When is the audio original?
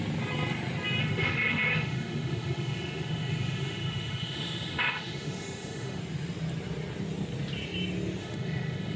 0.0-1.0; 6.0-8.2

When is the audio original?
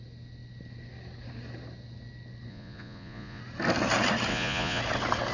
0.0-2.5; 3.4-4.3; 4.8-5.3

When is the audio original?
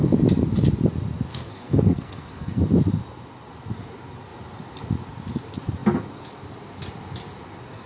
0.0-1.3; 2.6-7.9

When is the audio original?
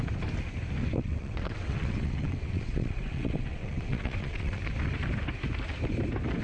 0.0-0.8; 4.6-6.4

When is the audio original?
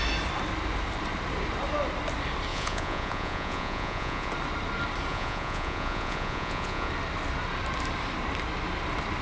0.0-2.5; 4.3-5.1; 6.9-9.2